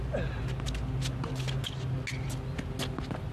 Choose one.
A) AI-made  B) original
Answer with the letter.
B